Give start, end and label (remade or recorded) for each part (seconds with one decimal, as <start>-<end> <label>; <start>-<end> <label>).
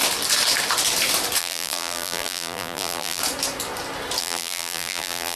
0.0-1.4 recorded; 1.4-3.2 remade; 3.2-4.2 recorded; 4.2-5.4 remade